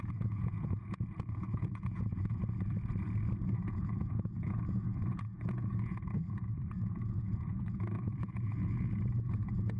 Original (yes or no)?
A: no